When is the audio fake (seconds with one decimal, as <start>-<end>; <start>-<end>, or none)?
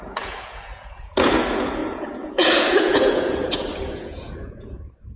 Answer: 0.0-5.2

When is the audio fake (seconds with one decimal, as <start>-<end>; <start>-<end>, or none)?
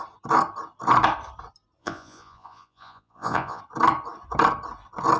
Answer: 1.8-3.6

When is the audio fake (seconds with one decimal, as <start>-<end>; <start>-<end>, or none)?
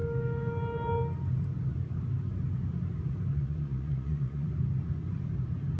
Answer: 3.3-4.5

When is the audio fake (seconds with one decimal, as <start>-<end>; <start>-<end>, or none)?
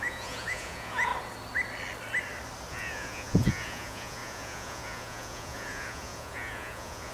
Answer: 0.0-1.1; 2.7-7.1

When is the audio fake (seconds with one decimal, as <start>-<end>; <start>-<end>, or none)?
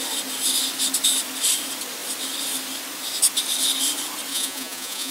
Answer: 4.3-5.1